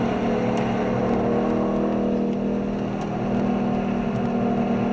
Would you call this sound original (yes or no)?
yes